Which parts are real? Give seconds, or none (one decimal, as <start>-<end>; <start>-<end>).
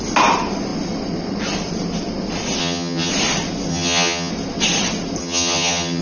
0.0-2.6; 3.1-3.7; 4.3-5.2